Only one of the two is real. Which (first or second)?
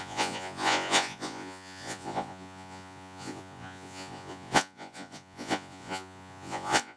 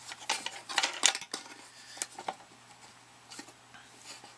second